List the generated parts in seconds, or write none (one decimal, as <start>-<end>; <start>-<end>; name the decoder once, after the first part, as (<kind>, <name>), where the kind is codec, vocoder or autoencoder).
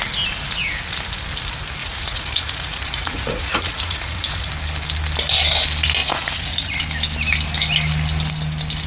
1.8-4.5 (vocoder, Vocos); 6.0-6.8